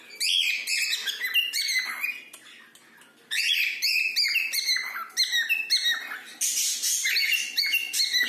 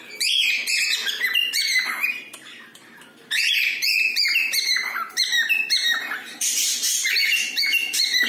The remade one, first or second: second